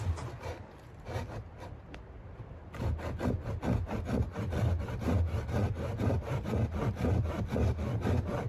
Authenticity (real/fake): real